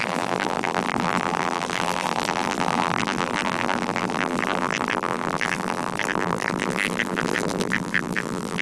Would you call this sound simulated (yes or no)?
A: yes